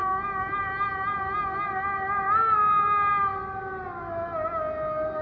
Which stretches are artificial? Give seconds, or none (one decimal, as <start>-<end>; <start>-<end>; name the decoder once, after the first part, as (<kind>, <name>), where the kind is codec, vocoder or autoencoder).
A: none